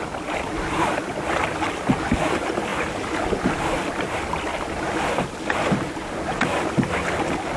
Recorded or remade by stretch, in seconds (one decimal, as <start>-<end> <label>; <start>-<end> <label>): 0.0-7.6 recorded